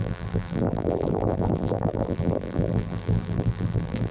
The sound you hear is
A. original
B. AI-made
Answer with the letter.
B